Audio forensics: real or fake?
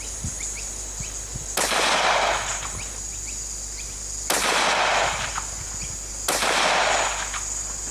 real